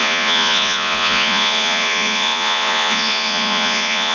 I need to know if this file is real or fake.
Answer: fake